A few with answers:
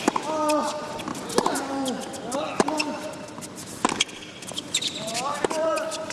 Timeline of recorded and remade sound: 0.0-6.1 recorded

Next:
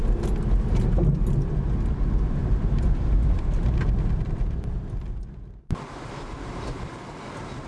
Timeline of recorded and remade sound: 0.0-2.4 recorded; 2.4-7.0 remade; 7.0-7.7 recorded

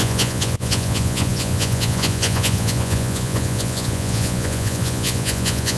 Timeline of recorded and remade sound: 0.0-5.8 remade

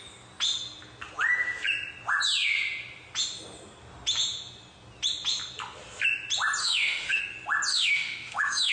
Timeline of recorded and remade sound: 0.0-6.6 recorded; 6.6-7.2 remade; 7.2-7.7 recorded; 7.7-8.7 remade

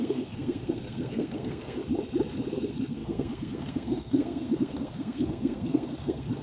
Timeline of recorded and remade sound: 0.0-1.8 remade; 1.8-2.5 recorded; 2.5-6.4 remade

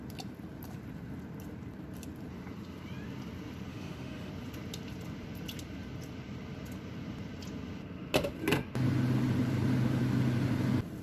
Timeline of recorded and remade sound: 0.0-3.7 recorded; 3.7-4.3 remade; 4.3-11.0 recorded

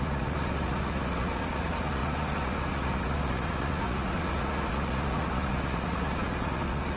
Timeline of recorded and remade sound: 0.0-7.0 remade

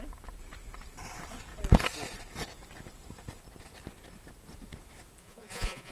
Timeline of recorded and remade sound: 0.0-5.2 recorded; 5.2-5.9 remade